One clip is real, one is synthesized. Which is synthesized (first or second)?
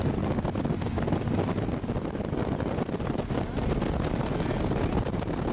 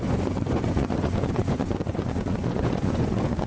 second